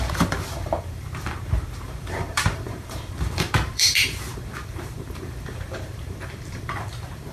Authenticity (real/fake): fake